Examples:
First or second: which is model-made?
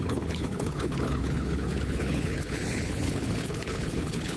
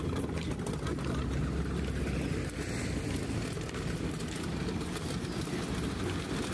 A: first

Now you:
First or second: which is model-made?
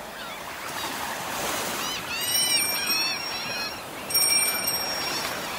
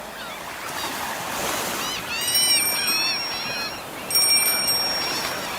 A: first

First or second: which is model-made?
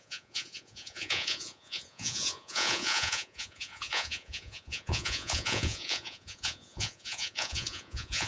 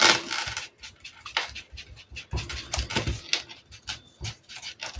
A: first